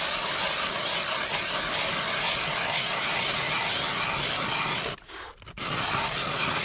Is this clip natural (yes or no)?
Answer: yes